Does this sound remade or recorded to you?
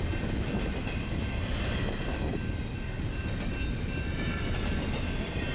recorded